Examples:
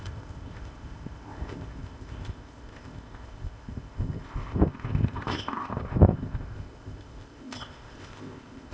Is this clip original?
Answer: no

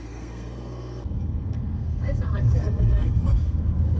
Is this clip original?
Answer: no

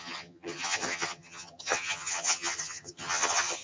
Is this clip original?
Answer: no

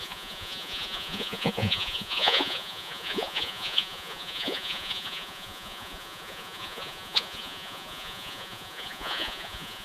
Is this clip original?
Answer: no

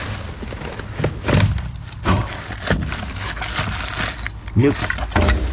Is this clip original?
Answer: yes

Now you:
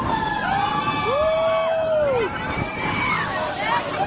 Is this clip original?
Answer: yes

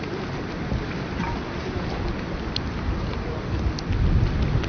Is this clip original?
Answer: yes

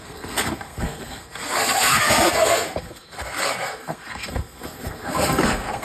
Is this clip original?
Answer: no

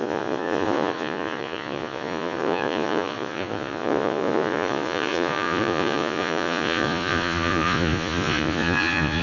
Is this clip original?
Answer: no